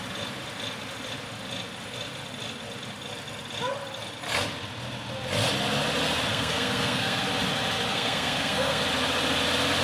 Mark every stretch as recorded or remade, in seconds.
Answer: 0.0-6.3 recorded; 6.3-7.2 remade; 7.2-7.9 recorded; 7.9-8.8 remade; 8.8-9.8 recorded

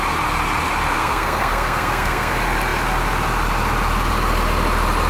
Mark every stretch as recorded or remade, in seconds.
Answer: 0.0-0.9 recorded; 0.9-2.3 remade; 2.3-5.1 recorded

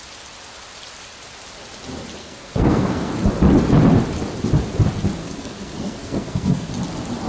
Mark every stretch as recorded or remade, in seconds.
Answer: 0.0-2.2 recorded; 2.2-3.1 remade; 3.1-5.2 recorded; 5.2-6.7 remade; 6.7-7.3 recorded

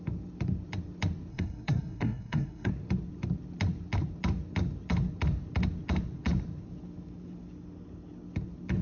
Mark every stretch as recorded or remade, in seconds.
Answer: 0.0-1.3 recorded; 1.3-2.7 remade; 2.7-8.8 recorded

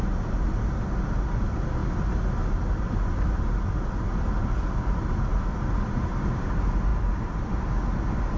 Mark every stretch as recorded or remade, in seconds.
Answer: 0.0-8.4 recorded

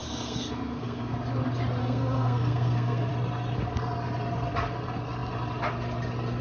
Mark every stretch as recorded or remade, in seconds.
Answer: 0.0-1.1 remade; 1.1-1.8 recorded; 1.8-3.1 remade; 3.1-6.4 recorded